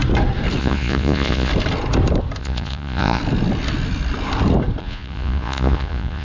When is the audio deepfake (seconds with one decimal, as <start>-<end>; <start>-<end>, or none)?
0.6-1.5; 2.4-3.2; 4.8-6.2